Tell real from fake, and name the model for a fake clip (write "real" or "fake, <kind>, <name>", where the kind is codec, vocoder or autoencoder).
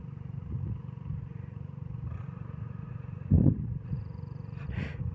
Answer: fake, vocoder, Vocos